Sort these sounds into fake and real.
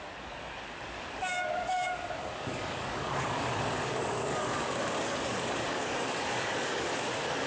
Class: fake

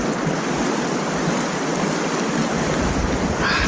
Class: real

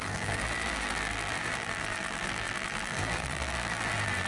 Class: fake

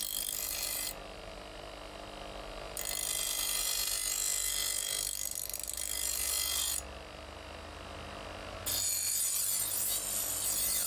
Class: real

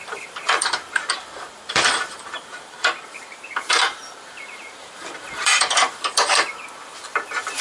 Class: fake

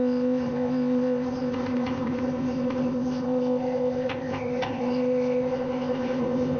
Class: fake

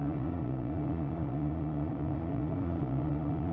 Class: fake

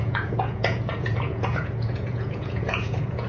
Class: fake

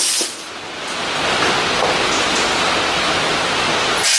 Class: real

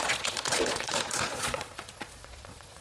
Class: fake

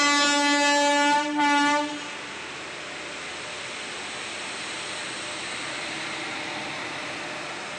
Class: real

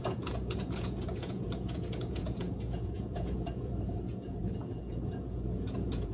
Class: fake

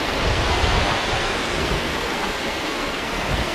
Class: fake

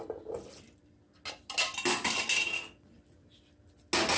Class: real